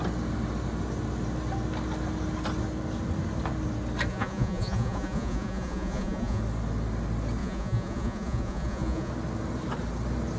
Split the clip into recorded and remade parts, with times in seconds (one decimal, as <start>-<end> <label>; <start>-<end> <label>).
0.0-4.1 recorded; 4.1-6.4 remade; 6.4-7.4 recorded; 7.4-9.1 remade; 9.1-10.4 recorded